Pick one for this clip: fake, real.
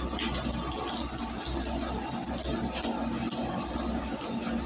real